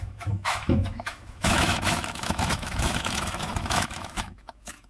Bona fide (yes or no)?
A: no